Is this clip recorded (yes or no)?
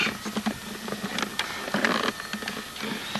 yes